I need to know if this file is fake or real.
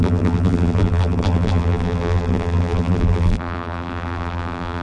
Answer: fake